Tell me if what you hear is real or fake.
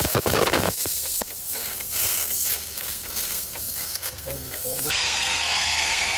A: fake